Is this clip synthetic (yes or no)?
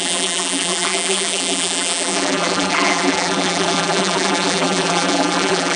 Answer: yes